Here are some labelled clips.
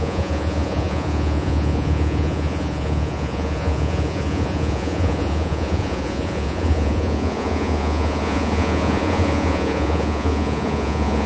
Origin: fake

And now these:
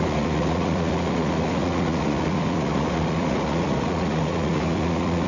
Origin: fake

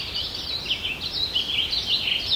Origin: real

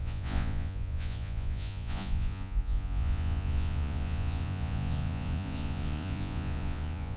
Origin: fake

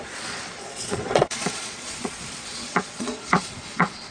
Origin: fake